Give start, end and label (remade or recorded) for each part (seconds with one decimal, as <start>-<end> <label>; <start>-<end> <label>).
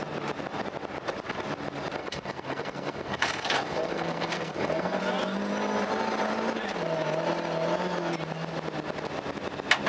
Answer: 0.0-2.0 recorded; 2.0-5.0 remade; 5.0-9.9 recorded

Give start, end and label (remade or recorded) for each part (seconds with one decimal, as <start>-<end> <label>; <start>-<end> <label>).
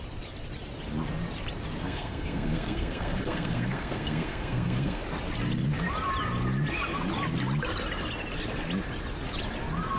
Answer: 0.0-1.8 recorded; 1.8-5.0 remade; 5.0-10.0 recorded